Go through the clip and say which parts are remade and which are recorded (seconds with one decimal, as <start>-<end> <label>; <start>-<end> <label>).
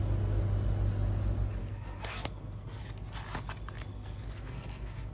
0.0-1.6 recorded; 1.6-2.8 remade; 2.8-3.9 recorded; 3.9-5.1 remade